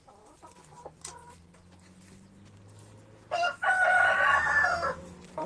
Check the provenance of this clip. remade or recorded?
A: recorded